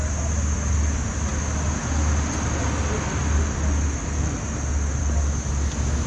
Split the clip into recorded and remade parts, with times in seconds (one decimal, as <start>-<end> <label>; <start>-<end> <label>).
0.0-6.1 recorded